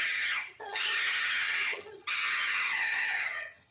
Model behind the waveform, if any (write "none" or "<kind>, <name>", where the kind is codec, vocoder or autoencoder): vocoder, HiFi-GAN